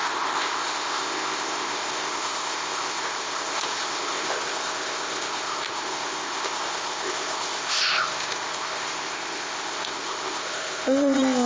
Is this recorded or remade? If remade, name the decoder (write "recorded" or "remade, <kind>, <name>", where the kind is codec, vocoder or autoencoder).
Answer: remade, codec, ZipCodec